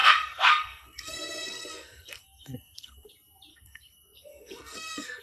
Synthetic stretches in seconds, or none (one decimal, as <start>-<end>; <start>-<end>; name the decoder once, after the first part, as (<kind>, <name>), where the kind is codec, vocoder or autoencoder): 0.0-3.1 (codec, SNAC); 3.5-5.2